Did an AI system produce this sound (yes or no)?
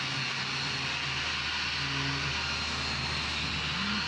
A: no